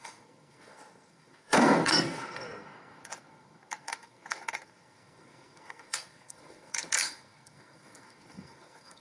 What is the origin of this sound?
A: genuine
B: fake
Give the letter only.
B